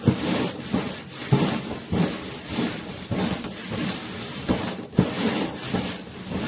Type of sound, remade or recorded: recorded